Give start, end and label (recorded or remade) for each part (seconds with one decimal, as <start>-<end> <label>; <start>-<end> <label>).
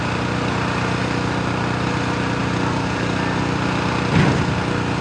0.0-2.4 recorded; 2.4-3.4 remade; 3.4-5.0 recorded